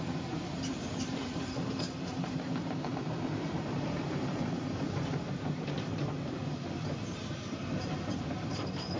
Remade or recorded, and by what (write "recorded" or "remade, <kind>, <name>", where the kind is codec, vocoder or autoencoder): remade, vocoder, BigVGAN v2